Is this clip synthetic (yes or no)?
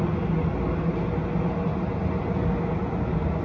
no